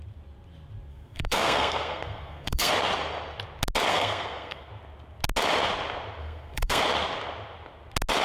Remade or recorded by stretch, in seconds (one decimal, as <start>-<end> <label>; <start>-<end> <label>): 0.0-0.9 recorded; 0.9-2.7 remade; 2.7-3.9 recorded; 3.9-4.7 remade; 4.7-6.2 recorded; 6.2-6.8 remade; 6.8-8.2 recorded